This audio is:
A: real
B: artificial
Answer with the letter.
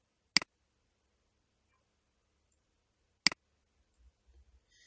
A